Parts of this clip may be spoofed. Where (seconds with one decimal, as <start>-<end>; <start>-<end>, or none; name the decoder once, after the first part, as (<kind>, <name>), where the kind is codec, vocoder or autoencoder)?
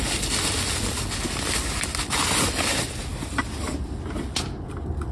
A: none